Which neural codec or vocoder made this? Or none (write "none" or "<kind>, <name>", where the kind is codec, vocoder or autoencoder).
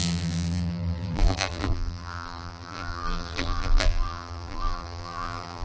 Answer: vocoder, BigVGAN v2